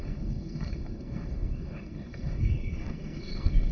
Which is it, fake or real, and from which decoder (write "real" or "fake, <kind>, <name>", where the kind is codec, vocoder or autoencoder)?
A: fake, codec, SNAC